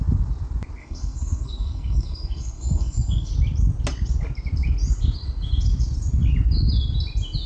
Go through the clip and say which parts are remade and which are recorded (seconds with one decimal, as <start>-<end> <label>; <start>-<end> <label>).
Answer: 0.0-0.8 recorded; 0.8-3.3 remade; 3.3-7.5 recorded